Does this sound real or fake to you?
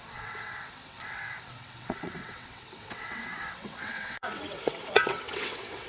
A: fake